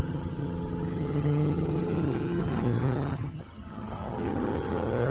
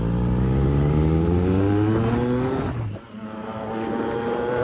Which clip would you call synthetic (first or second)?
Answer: first